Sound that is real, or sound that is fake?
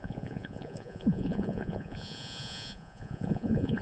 fake